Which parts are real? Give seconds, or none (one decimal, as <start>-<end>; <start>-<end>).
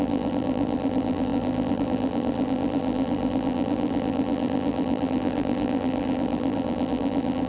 none